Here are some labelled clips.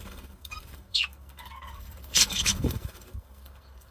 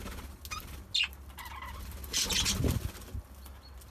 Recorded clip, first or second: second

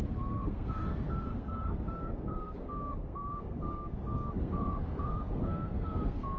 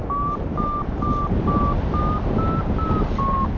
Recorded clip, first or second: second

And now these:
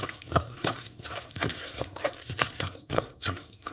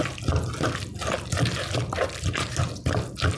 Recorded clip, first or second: second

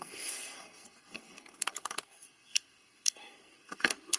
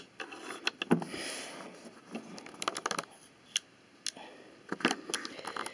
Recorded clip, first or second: second